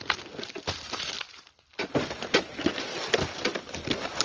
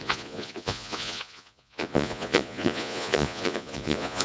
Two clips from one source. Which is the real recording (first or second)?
first